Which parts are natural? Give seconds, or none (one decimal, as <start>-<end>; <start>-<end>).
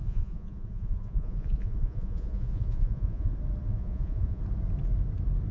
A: 3.3-3.7; 4.4-5.5